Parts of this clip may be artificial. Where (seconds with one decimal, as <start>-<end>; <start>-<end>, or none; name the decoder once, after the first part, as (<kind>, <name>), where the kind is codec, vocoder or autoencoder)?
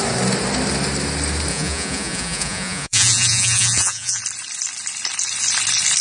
1.5-4.2 (vocoder, Vocos)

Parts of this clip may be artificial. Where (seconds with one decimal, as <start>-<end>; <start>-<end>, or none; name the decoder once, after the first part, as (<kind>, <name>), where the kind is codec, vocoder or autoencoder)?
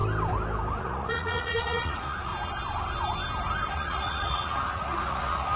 0.8-2.3 (vocoder, Vocos); 3.7-5.6